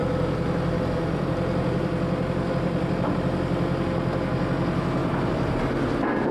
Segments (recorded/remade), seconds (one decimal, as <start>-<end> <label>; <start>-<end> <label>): 0.0-3.1 remade; 3.1-5.0 recorded; 5.0-5.6 remade; 5.6-6.3 recorded